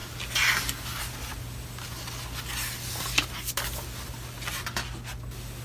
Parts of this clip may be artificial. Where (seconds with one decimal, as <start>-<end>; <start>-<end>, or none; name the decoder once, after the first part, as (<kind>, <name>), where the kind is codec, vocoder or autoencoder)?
none